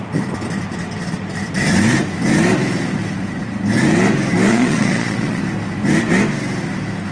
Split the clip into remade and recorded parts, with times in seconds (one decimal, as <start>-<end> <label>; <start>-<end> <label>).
0.0-4.5 recorded; 4.5-5.4 remade; 5.4-7.1 recorded